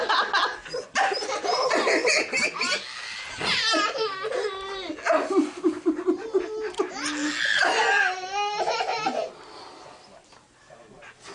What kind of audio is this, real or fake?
real